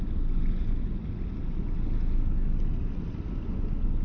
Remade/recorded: recorded